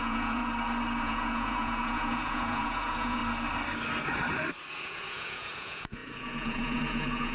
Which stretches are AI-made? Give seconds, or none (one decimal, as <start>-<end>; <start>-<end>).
0.0-0.4; 1.0-3.2; 4.7-7.3